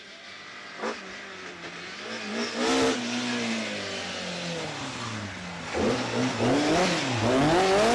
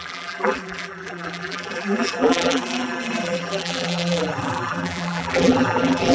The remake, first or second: second